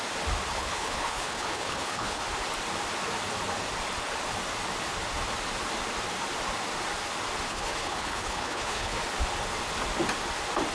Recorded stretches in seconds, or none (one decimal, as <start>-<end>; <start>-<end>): 0.0-0.5; 2.2-7.5; 9.0-10.7